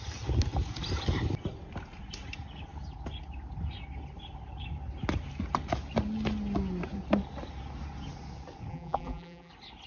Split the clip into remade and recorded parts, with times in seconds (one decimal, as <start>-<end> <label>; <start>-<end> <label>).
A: 0.0-8.7 recorded; 8.7-9.5 remade; 9.5-9.9 recorded